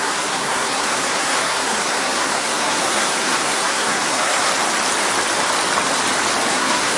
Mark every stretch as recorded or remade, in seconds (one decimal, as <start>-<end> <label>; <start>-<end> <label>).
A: 0.0-4.5 remade; 4.5-6.5 recorded; 6.5-7.0 remade